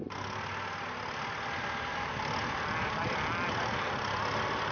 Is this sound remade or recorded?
recorded